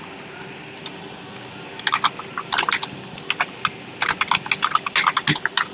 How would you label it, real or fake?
real